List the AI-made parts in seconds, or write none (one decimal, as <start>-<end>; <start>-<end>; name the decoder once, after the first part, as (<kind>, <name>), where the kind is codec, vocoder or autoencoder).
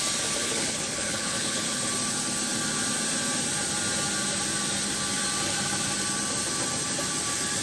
0.4-1.9 (codec, HILCodec)